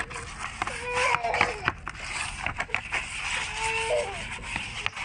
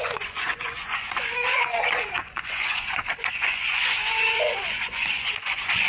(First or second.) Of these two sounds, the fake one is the second